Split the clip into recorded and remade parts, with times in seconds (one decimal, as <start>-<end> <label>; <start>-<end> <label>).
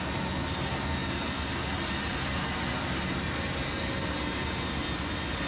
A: 0.0-5.5 recorded